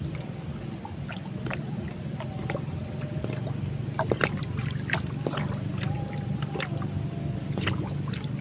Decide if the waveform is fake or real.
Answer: real